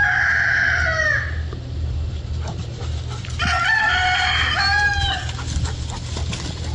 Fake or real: real